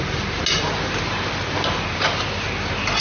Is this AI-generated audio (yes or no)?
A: no